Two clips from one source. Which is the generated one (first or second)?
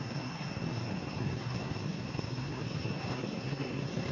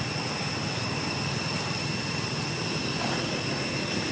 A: first